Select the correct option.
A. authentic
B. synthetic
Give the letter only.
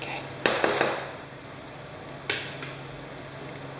A